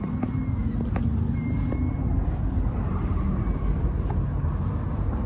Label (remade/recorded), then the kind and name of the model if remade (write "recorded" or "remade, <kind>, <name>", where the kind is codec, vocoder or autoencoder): recorded